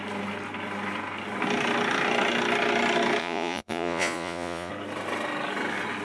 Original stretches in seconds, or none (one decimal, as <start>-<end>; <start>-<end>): 0.0-3.2; 4.7-6.0